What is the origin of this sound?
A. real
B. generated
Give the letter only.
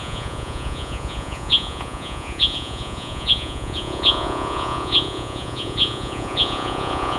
B